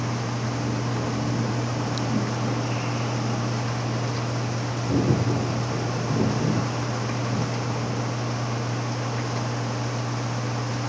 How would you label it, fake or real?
real